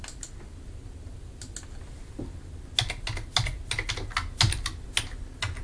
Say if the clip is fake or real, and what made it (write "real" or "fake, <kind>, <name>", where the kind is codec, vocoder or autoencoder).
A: real